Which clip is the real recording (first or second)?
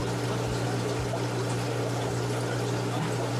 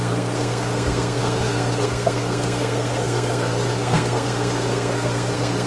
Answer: first